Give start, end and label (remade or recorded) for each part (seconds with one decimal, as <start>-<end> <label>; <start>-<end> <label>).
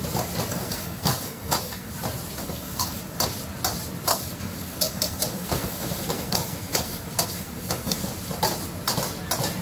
0.0-0.5 recorded; 0.5-1.9 remade; 1.9-2.4 recorded; 2.4-3.0 remade; 3.0-4.1 recorded; 4.1-8.1 remade; 8.1-9.6 recorded